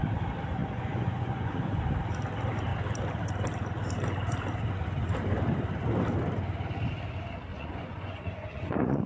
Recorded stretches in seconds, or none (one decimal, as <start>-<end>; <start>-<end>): 0.0-0.6; 1.8-7.5